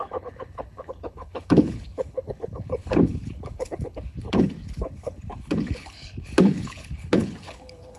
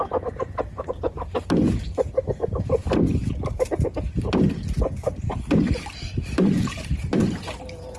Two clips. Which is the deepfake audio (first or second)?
first